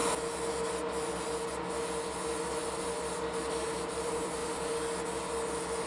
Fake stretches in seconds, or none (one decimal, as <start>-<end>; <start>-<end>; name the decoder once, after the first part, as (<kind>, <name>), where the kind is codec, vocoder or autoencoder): 3.5-4.4 (vocoder, BigVGAN v2)